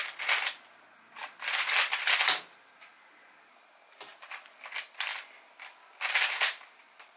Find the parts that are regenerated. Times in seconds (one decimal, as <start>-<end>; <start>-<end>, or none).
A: none